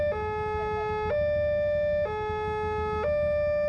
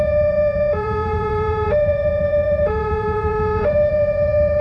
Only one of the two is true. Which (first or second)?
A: first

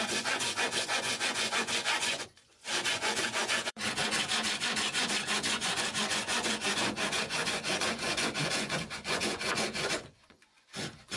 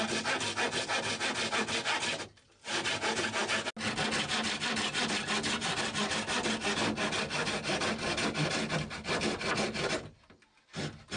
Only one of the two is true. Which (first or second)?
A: second